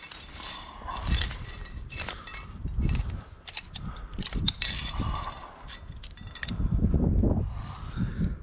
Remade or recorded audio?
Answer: recorded